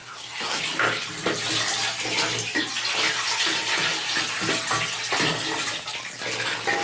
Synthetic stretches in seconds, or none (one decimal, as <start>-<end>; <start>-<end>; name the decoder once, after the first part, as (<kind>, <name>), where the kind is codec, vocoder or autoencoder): 0.0-0.6 (codec, SNAC)